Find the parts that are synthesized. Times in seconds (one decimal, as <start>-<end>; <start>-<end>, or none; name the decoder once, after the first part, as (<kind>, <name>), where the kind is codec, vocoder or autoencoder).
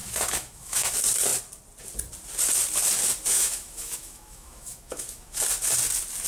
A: 0.0-0.9 (autoencoder, DAC-VAE); 3.3-5.4